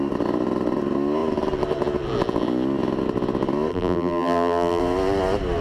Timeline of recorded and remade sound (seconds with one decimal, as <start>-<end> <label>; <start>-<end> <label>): 0.0-3.7 recorded; 3.7-4.8 remade; 4.8-5.6 recorded